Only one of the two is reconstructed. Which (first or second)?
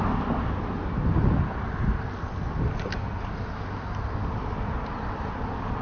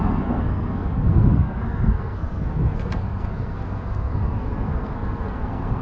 second